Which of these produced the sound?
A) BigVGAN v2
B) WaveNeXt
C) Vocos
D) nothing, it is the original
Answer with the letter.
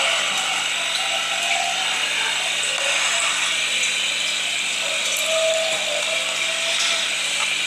D